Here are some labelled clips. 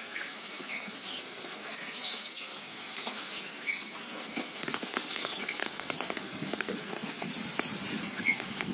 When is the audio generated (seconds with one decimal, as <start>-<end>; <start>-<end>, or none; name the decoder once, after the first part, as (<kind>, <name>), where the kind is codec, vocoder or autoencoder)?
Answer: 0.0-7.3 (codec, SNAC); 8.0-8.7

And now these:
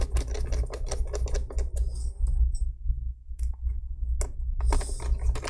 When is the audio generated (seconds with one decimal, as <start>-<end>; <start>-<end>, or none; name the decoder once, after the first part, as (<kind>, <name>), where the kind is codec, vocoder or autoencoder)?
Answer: 2.0-4.2 (codec, SNAC)

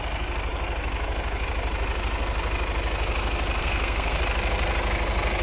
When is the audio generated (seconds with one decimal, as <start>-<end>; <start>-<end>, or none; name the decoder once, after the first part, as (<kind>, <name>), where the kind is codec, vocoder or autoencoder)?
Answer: 3.6-4.2 (codec, SNAC)

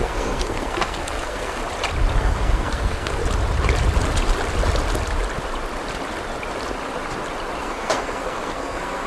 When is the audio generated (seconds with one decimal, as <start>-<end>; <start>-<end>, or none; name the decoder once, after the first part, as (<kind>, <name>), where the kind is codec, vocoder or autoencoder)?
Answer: 0.0-1.6 (codec, SNAC); 2.2-3.2; 7.6-9.1

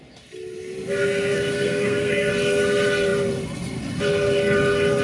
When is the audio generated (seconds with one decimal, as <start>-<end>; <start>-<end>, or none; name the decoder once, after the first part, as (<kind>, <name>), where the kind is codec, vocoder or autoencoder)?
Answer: 1.0-2.3 (codec, SNAC)

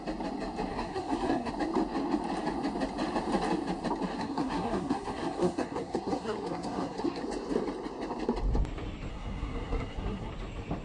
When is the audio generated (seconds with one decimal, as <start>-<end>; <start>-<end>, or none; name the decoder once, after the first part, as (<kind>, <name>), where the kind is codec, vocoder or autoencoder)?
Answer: 0.7-1.5 (codec, SNAC); 4.2-7.2; 9.1-10.3

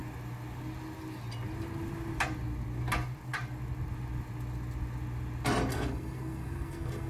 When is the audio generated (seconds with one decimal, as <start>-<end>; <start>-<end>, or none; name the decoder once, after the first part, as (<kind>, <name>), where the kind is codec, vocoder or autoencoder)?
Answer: 5.7-7.1 (codec, SNAC)